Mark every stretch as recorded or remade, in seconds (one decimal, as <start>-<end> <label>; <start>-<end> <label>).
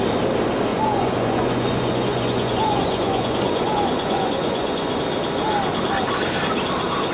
0.0-0.7 recorded; 0.7-5.0 remade; 5.0-7.1 recorded